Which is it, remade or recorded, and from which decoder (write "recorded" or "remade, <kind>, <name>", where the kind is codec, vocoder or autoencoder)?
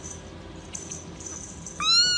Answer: recorded